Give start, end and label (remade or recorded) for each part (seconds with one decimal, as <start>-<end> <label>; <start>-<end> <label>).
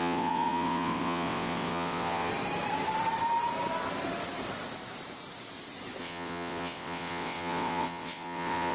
0.0-2.3 remade; 2.3-6.0 recorded; 6.0-8.7 remade